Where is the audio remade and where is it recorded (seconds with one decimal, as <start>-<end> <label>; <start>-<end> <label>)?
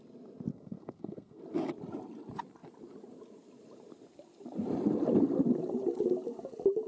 0.0-0.5 recorded; 0.5-1.4 remade; 1.4-6.9 recorded